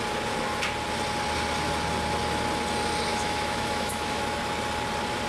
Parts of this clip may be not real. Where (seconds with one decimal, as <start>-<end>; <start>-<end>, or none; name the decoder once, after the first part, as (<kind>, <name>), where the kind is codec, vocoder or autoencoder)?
3.1-4.2 (autoencoder, DAC-VAE)